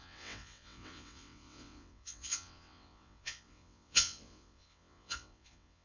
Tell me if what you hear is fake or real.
fake